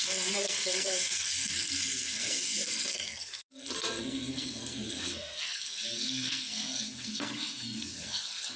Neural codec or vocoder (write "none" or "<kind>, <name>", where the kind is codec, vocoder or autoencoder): codec, SNAC